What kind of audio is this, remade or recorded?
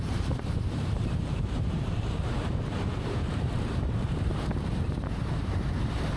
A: remade